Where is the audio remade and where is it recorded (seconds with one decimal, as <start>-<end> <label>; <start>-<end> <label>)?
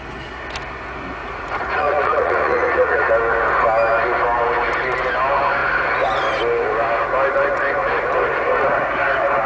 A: 0.0-1.2 recorded; 1.2-3.1 remade; 3.1-9.5 recorded